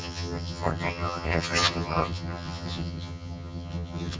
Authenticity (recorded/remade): remade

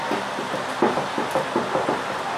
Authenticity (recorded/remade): recorded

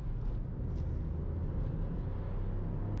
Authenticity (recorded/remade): recorded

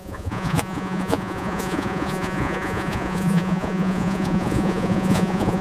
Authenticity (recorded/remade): remade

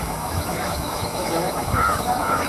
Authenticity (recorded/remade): remade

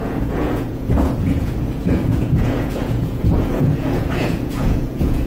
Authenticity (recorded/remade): remade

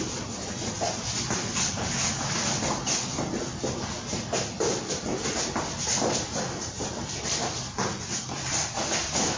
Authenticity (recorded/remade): recorded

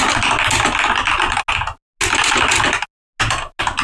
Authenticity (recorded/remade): recorded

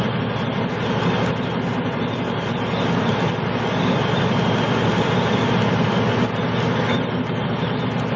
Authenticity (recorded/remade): recorded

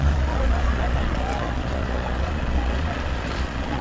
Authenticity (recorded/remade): remade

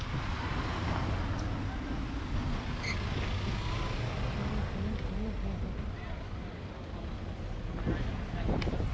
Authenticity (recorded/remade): recorded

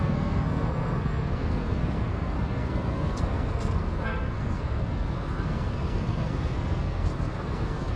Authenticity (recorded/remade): remade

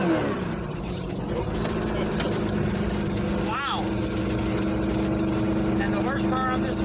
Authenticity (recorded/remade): recorded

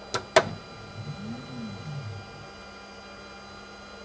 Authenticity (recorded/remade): recorded